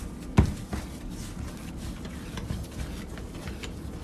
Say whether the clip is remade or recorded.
recorded